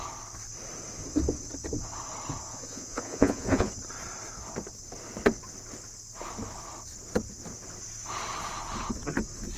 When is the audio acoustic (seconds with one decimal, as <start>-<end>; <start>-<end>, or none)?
0.0-2.5; 3.7-9.6